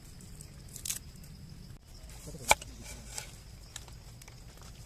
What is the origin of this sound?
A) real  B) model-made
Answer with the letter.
A